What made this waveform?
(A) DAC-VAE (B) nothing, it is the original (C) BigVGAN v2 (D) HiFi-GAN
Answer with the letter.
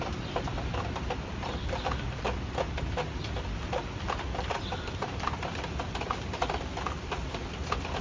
C